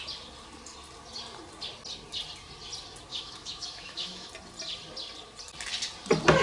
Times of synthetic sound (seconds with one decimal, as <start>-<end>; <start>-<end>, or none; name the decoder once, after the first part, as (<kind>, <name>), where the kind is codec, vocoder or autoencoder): 3.1-4.3 (autoencoder, DAC-VAE)